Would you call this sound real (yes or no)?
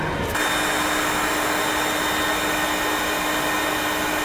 yes